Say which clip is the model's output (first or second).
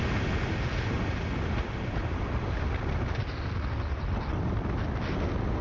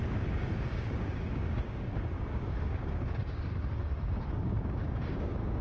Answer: second